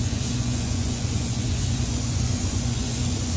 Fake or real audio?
fake